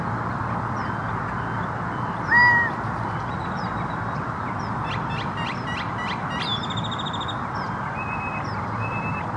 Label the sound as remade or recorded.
recorded